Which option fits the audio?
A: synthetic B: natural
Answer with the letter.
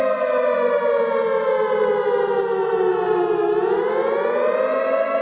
B